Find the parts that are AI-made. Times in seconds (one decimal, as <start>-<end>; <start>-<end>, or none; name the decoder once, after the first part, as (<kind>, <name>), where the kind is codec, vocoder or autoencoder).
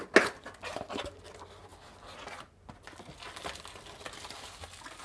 none